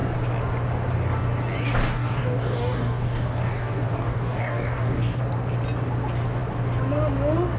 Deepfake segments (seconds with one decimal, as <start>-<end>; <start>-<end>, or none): 1.8-5.2